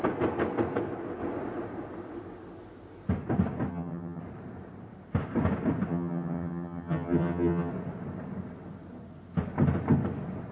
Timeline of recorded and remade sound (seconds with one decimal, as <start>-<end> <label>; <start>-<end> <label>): 0.0-3.7 recorded; 3.7-4.2 remade; 4.2-5.9 recorded; 5.9-7.7 remade; 7.7-10.5 recorded